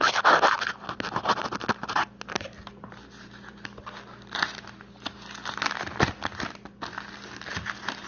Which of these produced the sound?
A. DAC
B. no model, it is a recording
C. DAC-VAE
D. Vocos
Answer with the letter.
B